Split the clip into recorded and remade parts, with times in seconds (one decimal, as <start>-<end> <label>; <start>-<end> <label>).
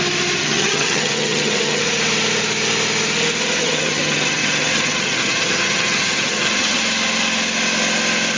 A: 0.0-0.4 recorded; 0.4-1.8 remade; 1.8-3.6 recorded; 3.6-6.8 remade; 6.8-8.4 recorded